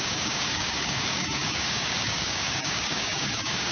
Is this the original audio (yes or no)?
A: no